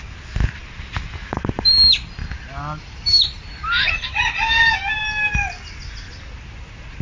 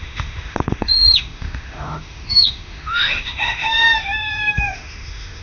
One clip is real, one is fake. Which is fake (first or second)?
second